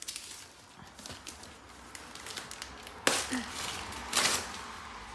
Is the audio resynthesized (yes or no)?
no